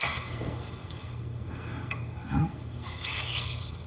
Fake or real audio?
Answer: fake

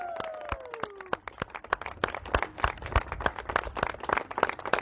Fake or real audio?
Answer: real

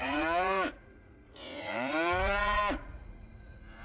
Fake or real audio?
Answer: fake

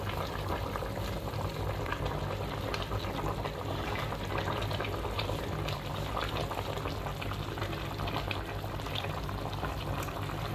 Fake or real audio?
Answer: real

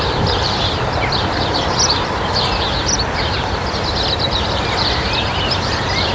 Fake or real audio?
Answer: fake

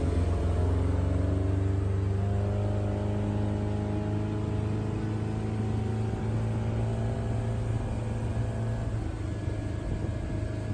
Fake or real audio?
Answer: real